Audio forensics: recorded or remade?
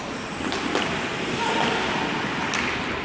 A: recorded